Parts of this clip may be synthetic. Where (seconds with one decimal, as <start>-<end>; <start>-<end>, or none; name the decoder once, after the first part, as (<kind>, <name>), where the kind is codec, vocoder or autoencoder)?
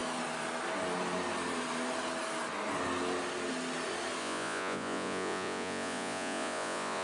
4.2-7.0 (vocoder, Vocos)